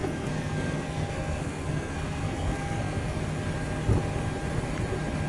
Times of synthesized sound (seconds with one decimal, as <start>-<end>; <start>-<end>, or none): 0.0-3.2